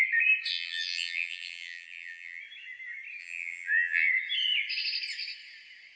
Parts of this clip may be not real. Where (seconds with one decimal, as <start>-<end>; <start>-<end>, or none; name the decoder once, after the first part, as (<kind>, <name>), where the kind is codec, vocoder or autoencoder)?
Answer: 0.5-2.4 (vocoder, BigVGAN v2); 3.2-4.1

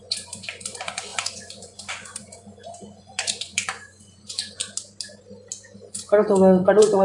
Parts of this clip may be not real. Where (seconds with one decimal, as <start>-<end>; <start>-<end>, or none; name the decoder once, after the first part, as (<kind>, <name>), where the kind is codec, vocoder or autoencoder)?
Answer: 0.0-4.6 (vocoder, Vocos); 5.9-7.0

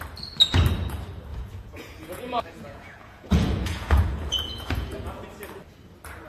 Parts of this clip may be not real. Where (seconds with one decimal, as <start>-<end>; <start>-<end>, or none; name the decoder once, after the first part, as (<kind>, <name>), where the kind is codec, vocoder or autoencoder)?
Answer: 1.3-5.1 (vocoder, Vocos)

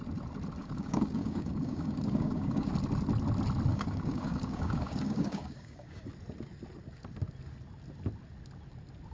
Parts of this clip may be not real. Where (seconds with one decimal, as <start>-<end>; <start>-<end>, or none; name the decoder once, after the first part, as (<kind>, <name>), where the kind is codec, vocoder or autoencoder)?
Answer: 0.6-2.7 (codec, DAC); 3.7-6.1